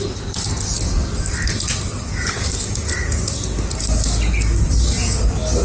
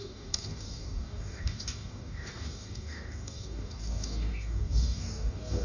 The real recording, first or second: first